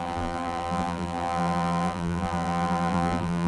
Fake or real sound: fake